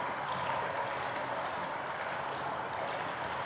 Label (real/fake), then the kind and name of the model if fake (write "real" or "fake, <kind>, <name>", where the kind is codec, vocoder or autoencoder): real